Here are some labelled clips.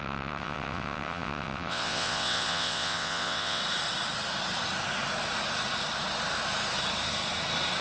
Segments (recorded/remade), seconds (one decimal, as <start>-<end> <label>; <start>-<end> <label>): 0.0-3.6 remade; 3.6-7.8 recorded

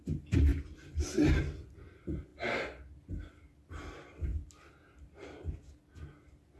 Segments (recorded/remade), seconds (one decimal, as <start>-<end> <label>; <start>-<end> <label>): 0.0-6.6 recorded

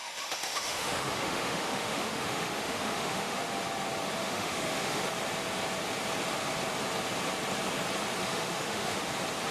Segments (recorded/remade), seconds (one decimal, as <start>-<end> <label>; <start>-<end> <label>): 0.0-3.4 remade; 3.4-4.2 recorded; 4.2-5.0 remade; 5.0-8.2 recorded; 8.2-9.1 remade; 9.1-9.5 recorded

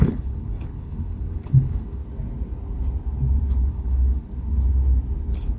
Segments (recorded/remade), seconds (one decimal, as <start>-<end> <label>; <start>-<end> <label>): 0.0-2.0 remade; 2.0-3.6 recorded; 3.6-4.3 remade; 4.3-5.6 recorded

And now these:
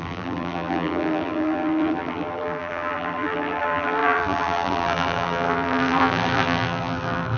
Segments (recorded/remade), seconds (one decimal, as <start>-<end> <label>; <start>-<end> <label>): 0.0-7.4 remade

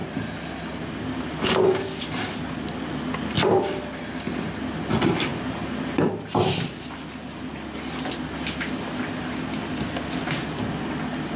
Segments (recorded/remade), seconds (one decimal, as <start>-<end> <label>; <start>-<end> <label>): 0.0-11.4 recorded

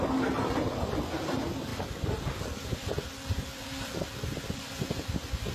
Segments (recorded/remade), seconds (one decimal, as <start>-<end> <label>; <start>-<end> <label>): 0.0-5.5 recorded

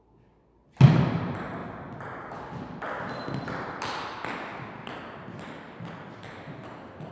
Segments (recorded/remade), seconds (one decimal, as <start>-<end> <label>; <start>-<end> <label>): 0.0-7.1 recorded